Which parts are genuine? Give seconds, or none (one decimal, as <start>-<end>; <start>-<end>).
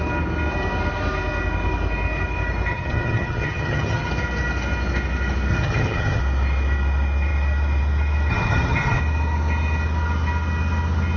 0.0-2.7; 4.1-5.5; 6.2-8.3; 9.0-11.2